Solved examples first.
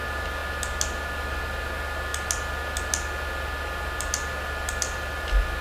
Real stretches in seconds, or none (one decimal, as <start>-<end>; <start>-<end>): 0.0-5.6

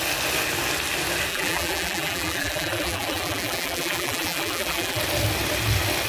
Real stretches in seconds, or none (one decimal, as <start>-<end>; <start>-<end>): 0.0-1.3; 5.0-6.1

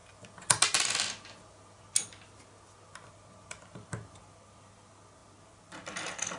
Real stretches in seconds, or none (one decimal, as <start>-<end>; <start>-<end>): 0.0-6.4

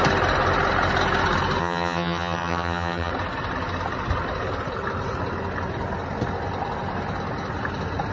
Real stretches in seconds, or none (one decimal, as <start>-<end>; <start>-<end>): 0.0-1.6; 3.1-8.1

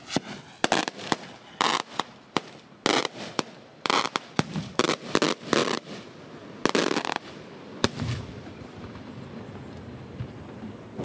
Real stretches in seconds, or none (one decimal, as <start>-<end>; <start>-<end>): 0.0-3.7; 5.0-5.6; 6.2-11.0

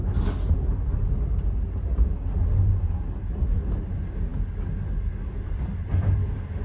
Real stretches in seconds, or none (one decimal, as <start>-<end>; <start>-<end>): 0.0-6.6